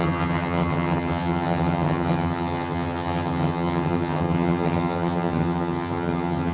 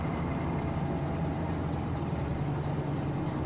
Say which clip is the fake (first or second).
first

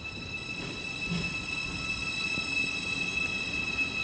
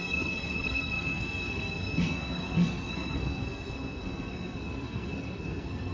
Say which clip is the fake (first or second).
second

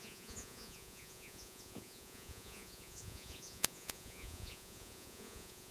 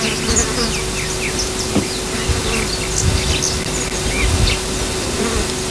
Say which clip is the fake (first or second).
first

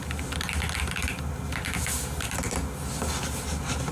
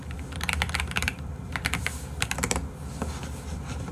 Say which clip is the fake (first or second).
second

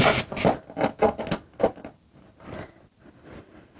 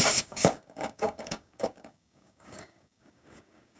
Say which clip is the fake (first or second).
second